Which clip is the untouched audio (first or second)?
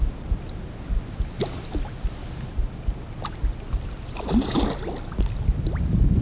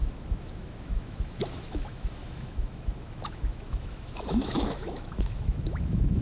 first